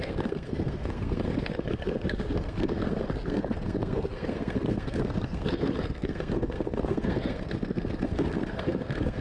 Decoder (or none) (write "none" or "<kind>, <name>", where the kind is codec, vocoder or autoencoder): codec, SNAC